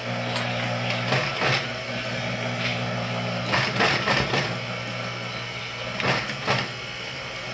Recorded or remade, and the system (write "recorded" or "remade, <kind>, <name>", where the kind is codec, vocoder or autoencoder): recorded